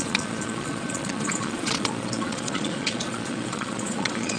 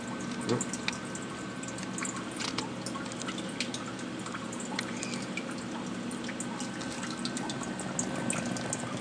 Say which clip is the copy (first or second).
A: first